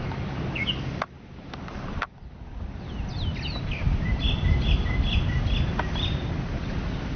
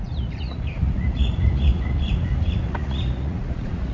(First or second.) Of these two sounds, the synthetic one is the second